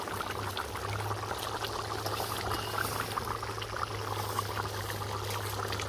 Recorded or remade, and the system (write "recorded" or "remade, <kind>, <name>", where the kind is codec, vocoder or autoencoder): recorded